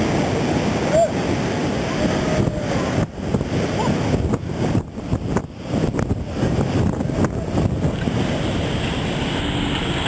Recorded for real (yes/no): yes